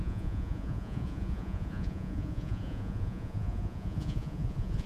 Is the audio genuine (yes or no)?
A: no